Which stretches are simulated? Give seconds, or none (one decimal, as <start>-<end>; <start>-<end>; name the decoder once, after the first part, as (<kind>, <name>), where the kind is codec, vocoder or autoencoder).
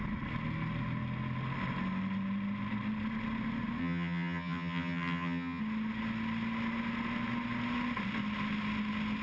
3.8-5.6 (vocoder, HiFi-GAN)